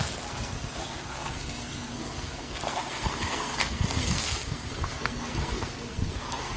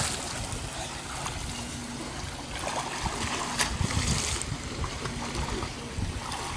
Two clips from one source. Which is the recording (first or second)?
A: second